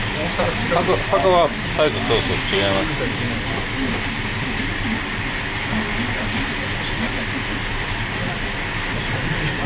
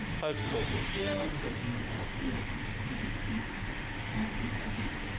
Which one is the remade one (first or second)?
second